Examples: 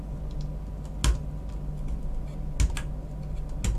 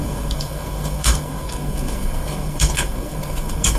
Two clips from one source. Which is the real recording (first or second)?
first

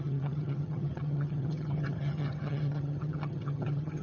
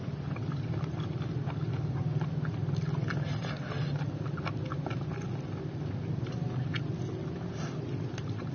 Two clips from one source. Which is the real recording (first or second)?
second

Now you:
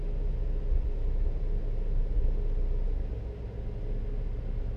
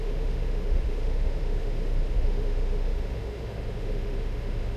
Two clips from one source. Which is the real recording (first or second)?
first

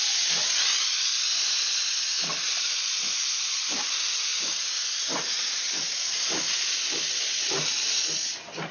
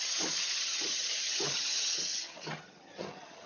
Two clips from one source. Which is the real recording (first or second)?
first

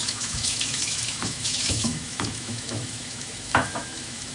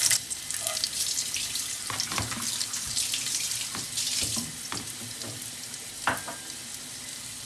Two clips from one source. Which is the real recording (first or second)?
second